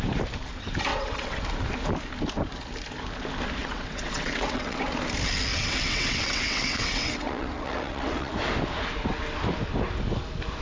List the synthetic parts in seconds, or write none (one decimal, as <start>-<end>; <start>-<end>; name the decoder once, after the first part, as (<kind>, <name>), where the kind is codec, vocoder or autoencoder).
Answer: 0.9-1.4 (vocoder, WaveNeXt); 3.6-4.8; 5.5-8.3